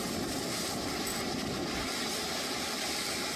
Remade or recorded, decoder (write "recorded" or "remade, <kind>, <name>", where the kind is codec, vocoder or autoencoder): recorded